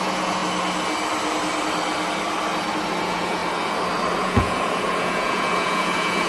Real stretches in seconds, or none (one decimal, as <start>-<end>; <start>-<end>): 0.4-3.0; 3.4-4.2